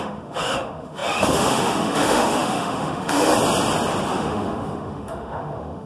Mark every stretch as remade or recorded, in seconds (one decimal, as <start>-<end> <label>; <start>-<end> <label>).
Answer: 0.0-3.3 remade; 3.3-4.1 recorded; 4.1-5.9 remade